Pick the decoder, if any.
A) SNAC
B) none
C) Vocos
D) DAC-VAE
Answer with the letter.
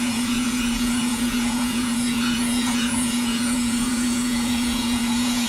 C